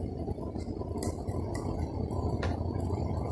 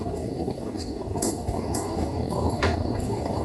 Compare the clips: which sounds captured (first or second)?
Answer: first